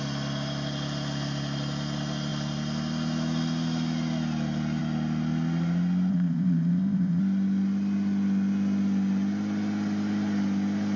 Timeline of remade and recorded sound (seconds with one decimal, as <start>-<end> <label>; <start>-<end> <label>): 0.0-6.1 recorded; 6.1-7.2 remade; 7.2-11.0 recorded